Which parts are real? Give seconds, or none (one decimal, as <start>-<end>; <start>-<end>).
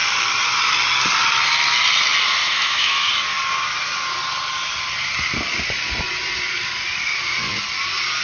0.0-2.4; 3.1-8.2